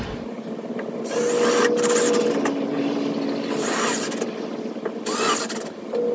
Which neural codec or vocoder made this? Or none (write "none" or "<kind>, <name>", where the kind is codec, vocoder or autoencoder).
none